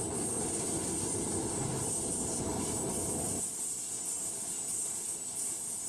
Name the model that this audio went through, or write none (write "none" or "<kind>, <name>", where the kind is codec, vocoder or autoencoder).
none